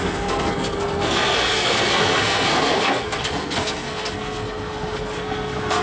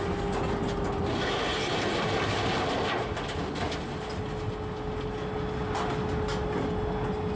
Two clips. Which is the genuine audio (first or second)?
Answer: second